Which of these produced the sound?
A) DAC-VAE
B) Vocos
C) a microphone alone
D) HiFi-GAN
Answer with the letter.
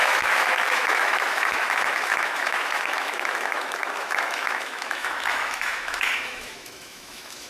A